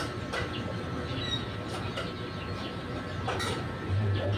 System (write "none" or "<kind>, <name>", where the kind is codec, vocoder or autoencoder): none